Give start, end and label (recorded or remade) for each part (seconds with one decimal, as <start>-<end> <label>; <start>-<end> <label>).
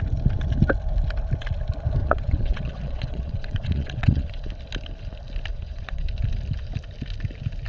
0.0-2.0 recorded; 2.0-4.5 remade; 4.5-5.5 recorded; 5.5-6.1 remade; 6.1-7.7 recorded